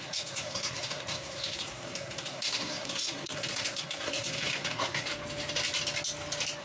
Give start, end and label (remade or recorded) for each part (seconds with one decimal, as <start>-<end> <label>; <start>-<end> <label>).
0.0-5.1 remade; 5.1-6.6 recorded